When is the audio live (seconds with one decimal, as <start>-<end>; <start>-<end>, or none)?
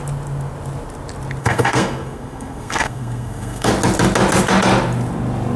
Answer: 0.0-1.4; 3.7-5.6